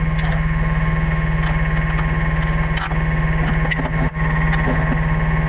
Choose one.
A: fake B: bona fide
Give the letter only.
B